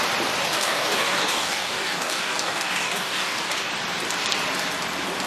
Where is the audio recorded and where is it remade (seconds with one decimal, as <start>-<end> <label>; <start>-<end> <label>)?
0.0-0.5 recorded; 0.5-3.7 remade; 3.7-5.3 recorded